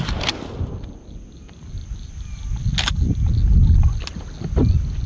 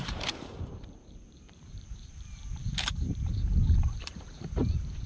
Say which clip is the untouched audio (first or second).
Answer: first